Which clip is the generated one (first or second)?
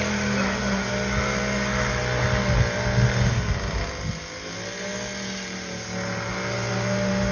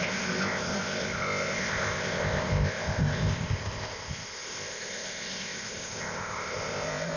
second